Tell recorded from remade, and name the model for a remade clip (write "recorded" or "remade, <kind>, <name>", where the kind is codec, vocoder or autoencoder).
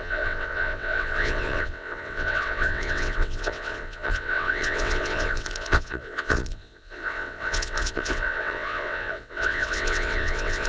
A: remade, vocoder, WaveNeXt